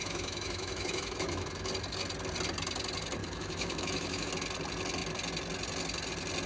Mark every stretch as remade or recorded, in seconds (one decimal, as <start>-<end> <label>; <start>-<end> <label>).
0.0-1.7 remade; 1.7-3.2 recorded; 3.2-4.3 remade; 4.3-6.5 recorded

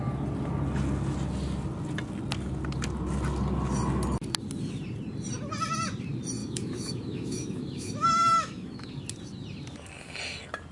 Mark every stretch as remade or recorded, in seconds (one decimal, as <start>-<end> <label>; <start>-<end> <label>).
0.0-6.4 recorded; 6.4-8.9 remade; 8.9-10.7 recorded

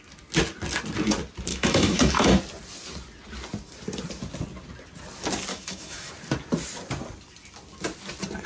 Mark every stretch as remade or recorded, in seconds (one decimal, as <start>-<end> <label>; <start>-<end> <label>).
0.0-1.5 recorded; 1.5-2.4 remade; 2.4-5.5 recorded; 5.5-6.1 remade; 6.1-8.5 recorded

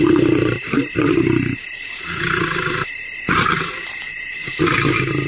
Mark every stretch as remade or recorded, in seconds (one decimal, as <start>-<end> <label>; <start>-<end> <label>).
0.0-5.3 recorded

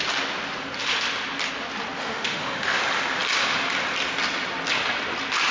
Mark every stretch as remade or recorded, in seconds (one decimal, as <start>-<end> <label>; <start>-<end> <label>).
0.0-2.0 recorded; 2.0-2.8 remade; 2.8-5.5 recorded

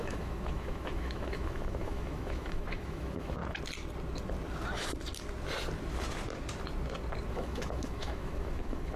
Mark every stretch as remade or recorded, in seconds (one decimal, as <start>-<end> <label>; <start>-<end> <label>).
0.0-3.4 remade; 3.4-7.3 recorded; 7.3-9.0 remade

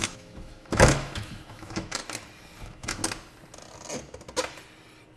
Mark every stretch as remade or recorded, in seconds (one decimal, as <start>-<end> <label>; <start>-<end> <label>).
0.0-2.0 remade; 2.0-2.6 recorded; 2.6-3.0 remade; 3.0-5.2 recorded

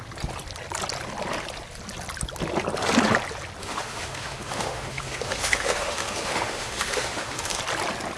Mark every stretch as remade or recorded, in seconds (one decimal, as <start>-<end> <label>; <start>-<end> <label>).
0.0-3.6 recorded; 3.6-7.6 remade; 7.6-8.2 recorded